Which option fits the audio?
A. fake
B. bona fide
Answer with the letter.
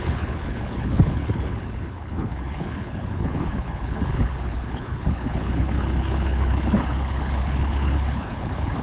A